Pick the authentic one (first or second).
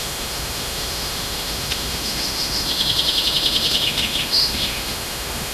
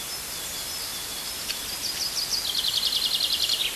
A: second